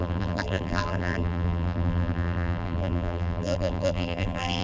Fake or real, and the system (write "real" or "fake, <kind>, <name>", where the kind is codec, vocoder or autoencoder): fake, vocoder, BigVGAN v2